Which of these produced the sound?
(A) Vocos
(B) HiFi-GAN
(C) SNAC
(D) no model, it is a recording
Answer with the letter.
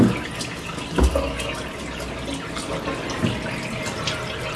D